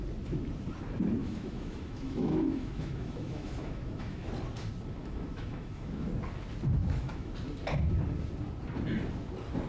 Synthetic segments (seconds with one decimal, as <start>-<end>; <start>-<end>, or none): 1.2-4.3; 5.0-6.1; 6.8-7.3